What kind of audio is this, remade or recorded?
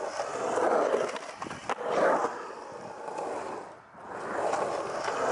recorded